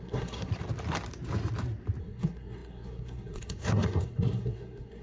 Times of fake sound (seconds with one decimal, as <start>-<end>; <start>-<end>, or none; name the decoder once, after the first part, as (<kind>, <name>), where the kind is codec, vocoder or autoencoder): 0.0-0.5 (codec, SNAC); 2.0-5.0